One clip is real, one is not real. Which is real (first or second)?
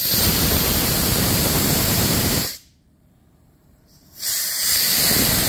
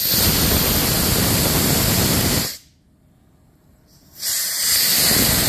second